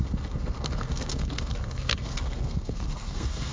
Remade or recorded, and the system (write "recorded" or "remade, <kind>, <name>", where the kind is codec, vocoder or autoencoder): remade, codec, SNAC